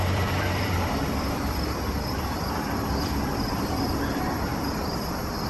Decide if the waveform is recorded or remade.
remade